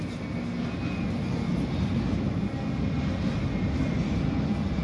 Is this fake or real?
real